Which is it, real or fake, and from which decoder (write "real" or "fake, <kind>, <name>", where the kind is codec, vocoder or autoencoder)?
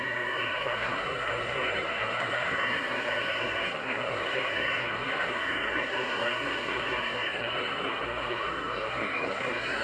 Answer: fake, codec, SNAC